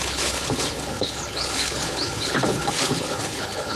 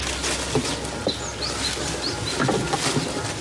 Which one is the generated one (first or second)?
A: first